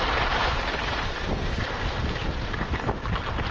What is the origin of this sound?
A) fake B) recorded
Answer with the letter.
B